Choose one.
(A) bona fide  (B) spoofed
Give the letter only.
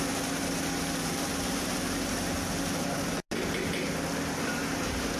A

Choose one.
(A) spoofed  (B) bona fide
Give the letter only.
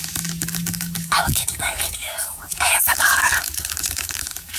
A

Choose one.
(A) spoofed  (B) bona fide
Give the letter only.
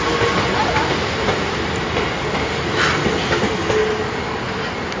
B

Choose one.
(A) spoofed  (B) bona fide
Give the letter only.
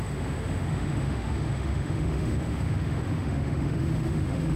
A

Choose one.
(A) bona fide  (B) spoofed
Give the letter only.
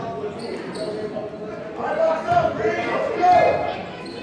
A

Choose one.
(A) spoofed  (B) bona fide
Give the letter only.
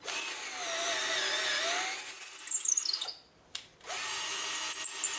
B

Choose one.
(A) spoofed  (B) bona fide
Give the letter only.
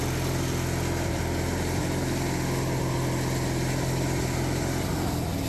B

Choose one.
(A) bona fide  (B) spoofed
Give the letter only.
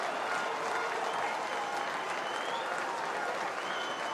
A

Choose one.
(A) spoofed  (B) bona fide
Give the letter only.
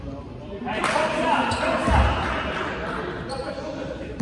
B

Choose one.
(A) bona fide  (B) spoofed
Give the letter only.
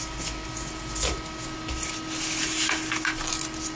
A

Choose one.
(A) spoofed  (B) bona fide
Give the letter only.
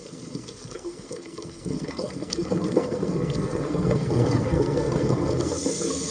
A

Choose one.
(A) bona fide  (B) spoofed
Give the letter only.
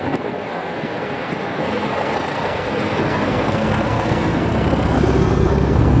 B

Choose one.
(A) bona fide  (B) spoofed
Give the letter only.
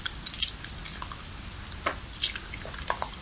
A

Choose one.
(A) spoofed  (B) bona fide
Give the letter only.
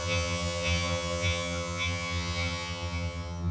A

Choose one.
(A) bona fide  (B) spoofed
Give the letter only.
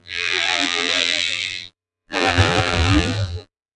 B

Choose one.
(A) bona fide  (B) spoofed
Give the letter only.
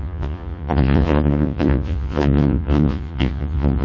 B